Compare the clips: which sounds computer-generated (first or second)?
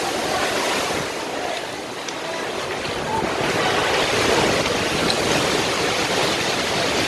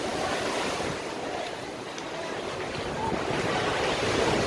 second